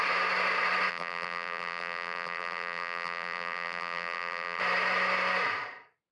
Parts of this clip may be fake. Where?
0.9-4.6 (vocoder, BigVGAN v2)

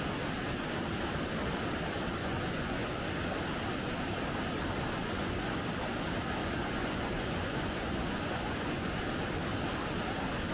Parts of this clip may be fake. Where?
2.2-2.9 (vocoder, Vocos); 5.0-5.6; 6.4-9.0

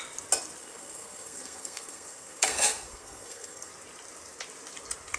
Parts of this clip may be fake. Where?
0.6-3.7 (codec, SNAC)

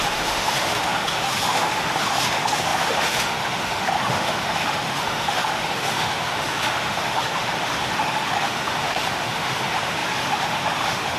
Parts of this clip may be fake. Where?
0.0-11.2 (autoencoder, DAC-VAE)

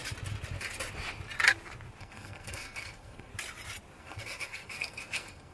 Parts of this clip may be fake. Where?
2.0-3.3 (codec, SNAC); 4.0-5.5

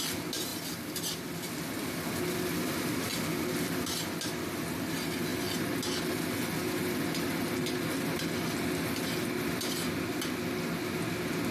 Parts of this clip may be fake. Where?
0.5-1.2 (vocoder, BigVGAN v2); 3.1-4.6

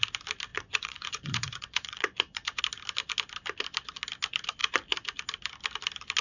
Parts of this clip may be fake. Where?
0.5-2.6 (vocoder, Vocos)